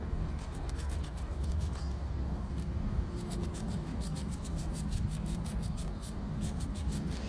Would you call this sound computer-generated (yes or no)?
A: yes